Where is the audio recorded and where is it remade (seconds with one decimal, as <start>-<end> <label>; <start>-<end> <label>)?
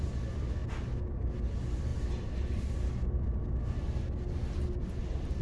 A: 0.0-1.9 recorded; 1.9-2.9 remade; 2.9-5.4 recorded